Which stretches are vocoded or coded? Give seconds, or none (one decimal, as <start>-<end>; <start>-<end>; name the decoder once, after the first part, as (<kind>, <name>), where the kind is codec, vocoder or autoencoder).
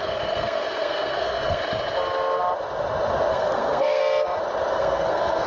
0.0-1.6 (codec, SNAC); 3.3-4.0; 4.7-5.5